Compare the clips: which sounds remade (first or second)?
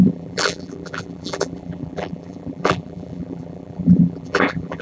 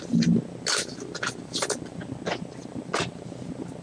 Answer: first